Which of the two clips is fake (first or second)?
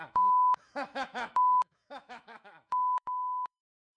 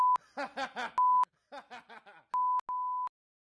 first